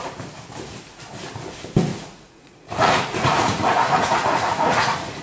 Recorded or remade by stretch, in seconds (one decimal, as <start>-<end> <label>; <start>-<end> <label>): 0.0-1.9 recorded; 1.9-5.2 remade